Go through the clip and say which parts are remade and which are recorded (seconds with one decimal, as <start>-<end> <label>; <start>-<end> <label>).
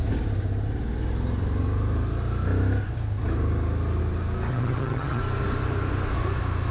0.0-4.5 recorded; 4.5-5.2 remade; 5.2-6.7 recorded